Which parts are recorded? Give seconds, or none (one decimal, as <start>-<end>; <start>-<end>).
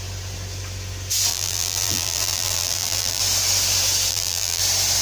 0.0-1.3; 3.2-4.1; 4.6-5.0